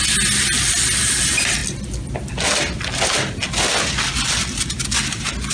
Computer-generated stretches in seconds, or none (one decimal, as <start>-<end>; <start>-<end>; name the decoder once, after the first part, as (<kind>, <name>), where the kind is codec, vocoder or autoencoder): none